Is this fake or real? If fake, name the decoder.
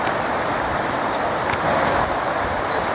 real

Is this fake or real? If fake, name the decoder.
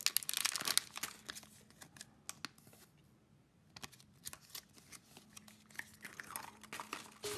real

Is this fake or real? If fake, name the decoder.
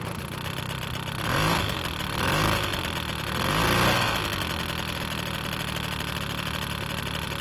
real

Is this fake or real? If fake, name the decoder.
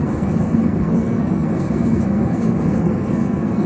fake, codec, SNAC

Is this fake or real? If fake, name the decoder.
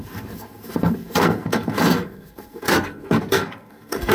fake, codec, SNAC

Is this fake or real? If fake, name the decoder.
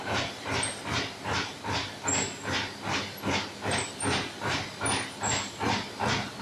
real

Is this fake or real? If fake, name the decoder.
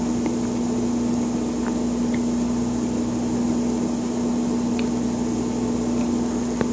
real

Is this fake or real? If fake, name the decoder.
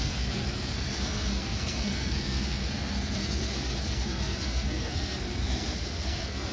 fake, codec, SNAC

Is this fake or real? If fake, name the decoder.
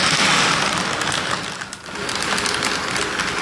real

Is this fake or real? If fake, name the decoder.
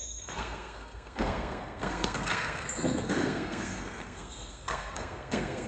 fake, codec, SNAC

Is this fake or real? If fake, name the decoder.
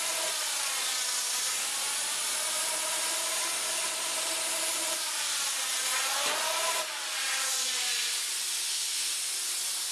real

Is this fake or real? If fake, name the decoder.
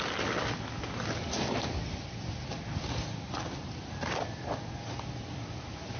real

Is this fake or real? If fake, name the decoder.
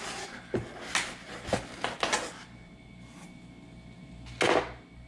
real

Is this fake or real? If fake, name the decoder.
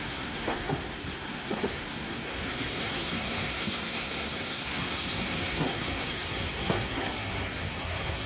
fake, codec, SNAC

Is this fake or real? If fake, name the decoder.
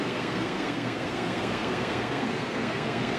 fake, codec, SNAC